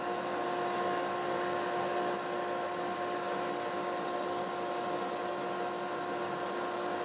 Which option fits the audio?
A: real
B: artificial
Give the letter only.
A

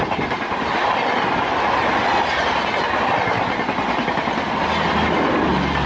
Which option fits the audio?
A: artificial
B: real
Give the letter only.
B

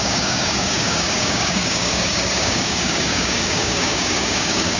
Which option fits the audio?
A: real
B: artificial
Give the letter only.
B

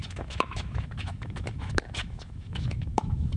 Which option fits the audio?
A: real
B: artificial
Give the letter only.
B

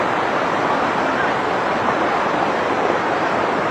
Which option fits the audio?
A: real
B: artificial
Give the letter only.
B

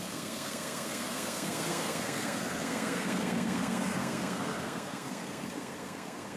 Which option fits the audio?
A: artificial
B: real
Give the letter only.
A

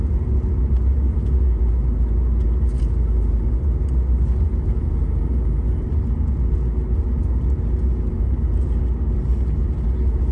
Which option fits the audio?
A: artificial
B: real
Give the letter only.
B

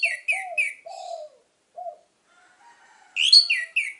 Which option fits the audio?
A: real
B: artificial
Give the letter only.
A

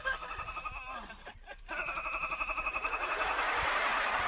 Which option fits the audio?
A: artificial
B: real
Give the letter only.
B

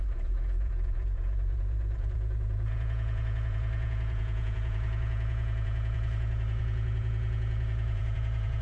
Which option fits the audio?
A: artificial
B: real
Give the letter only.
A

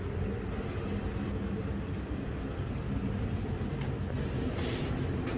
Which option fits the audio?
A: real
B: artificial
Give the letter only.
A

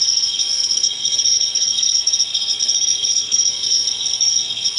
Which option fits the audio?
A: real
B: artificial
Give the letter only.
B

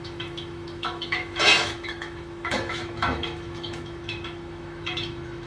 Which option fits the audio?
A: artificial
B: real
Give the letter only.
A